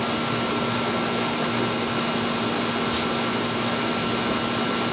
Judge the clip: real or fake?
real